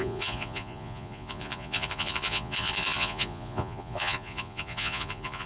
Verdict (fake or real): fake